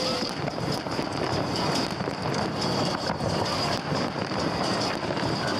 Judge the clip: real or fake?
real